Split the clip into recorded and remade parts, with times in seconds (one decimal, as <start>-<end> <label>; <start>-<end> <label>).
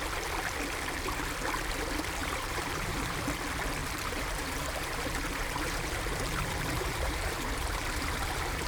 0.0-2.2 recorded; 2.2-3.2 remade; 3.2-3.8 recorded; 3.8-8.7 remade